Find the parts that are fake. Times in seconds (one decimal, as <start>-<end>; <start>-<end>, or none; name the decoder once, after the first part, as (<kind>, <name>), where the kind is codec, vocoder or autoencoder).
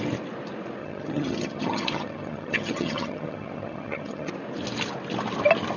0.8-4.3 (vocoder, HiFi-GAN)